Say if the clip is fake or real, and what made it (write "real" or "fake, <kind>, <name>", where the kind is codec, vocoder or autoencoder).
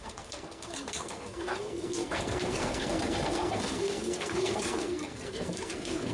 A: fake, codec, SNAC